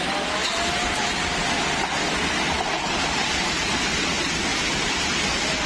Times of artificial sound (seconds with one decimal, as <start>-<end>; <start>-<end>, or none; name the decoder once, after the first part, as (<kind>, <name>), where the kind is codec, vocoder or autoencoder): none